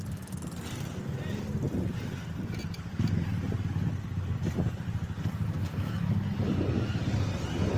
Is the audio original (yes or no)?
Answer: yes